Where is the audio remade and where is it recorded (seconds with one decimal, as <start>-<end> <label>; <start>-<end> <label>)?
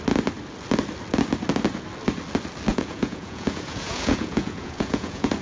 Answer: 0.0-2.7 recorded; 2.7-5.4 remade